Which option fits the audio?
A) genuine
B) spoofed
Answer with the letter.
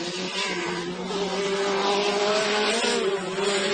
A